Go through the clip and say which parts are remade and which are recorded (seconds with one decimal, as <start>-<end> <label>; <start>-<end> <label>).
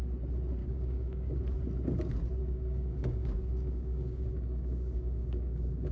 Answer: 0.0-0.6 recorded; 0.6-1.4 remade; 1.4-2.4 recorded; 2.4-5.9 remade